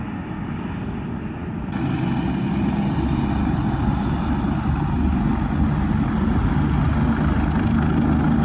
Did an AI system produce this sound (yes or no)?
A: no